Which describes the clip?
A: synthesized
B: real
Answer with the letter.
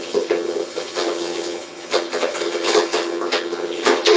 A